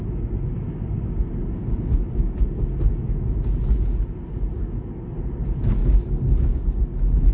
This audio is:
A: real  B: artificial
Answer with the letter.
A